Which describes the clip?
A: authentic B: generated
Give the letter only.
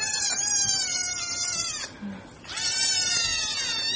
A